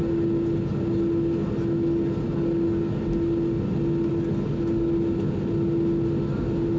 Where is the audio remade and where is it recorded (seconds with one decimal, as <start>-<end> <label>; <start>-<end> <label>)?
0.0-6.8 recorded